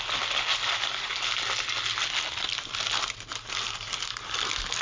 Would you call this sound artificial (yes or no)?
no